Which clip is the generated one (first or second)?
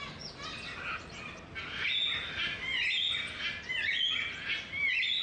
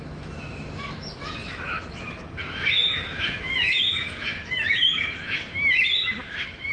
second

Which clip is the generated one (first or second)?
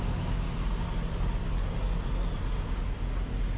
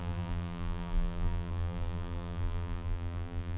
second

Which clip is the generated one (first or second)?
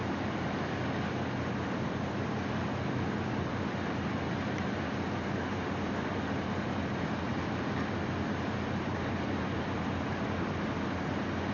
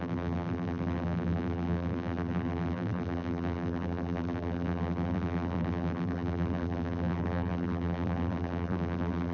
second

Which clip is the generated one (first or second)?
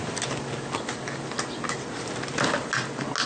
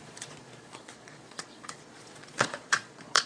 second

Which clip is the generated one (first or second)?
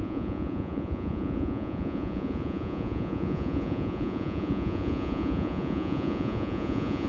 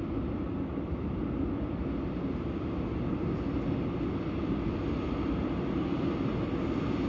first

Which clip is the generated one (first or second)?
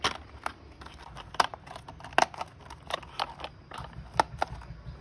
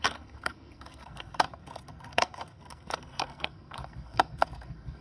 second